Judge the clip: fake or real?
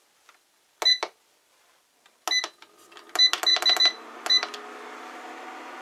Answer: real